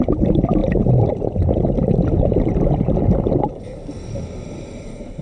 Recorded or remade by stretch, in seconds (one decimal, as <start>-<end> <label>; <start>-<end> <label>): 0.0-5.2 recorded